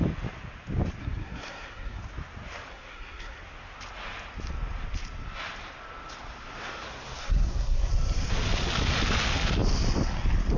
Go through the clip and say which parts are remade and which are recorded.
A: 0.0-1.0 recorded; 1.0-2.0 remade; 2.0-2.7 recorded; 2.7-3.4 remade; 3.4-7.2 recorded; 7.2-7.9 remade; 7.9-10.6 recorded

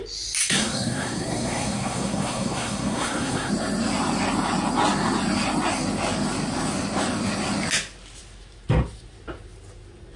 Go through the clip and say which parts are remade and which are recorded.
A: 0.0-0.4 recorded; 0.4-3.5 remade; 3.5-10.2 recorded

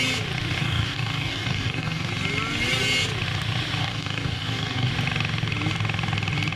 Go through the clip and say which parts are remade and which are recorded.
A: 0.0-0.6 recorded; 0.6-2.1 remade; 2.1-3.8 recorded; 3.8-4.9 remade; 4.9-6.6 recorded